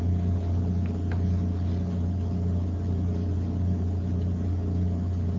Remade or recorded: recorded